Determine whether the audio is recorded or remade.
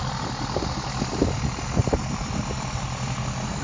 recorded